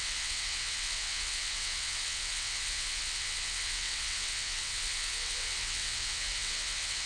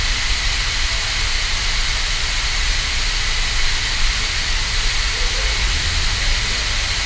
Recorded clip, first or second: second